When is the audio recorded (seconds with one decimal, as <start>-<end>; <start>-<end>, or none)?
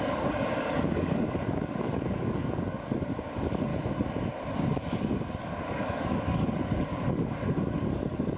3.7-4.7